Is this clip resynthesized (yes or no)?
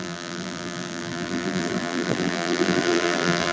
yes